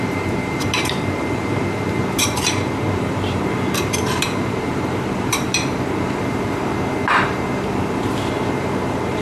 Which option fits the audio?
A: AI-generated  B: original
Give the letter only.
A